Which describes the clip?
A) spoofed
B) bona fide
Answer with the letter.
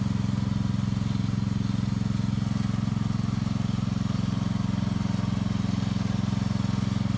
B